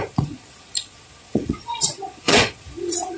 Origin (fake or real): fake